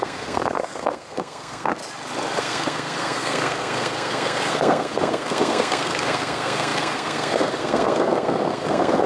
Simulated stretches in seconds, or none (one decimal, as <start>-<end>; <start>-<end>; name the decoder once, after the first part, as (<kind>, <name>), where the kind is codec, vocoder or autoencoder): 0.0-1.8 (codec, SNAC); 2.4-9.1